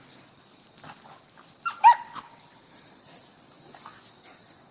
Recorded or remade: recorded